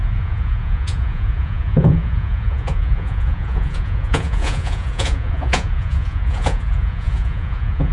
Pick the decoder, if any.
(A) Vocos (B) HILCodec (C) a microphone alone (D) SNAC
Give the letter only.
A